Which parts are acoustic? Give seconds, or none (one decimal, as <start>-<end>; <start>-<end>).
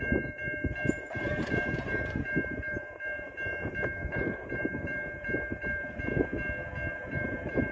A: 6.3-6.9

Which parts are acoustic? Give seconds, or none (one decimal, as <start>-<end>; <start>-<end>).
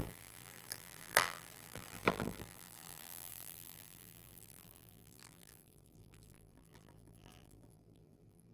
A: none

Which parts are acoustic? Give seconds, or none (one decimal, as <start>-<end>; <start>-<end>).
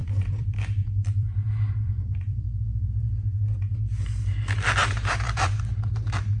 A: 3.4-4.8; 5.6-6.4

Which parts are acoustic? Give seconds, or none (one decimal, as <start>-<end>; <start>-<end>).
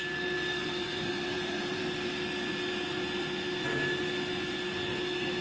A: 0.0-0.5; 1.8-5.4